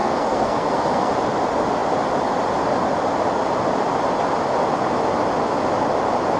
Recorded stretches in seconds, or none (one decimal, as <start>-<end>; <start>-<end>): 1.1-6.4